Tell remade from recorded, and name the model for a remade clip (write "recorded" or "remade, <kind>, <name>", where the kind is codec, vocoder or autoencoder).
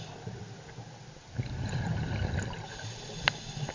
recorded